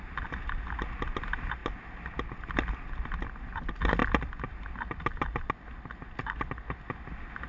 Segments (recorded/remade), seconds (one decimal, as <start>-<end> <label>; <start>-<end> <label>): 0.0-7.5 recorded